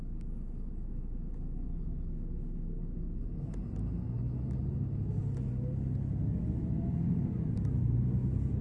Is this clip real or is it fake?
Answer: real